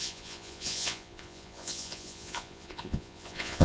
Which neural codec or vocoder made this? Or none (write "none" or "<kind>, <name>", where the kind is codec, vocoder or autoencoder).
vocoder, Vocos